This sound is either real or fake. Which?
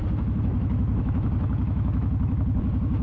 fake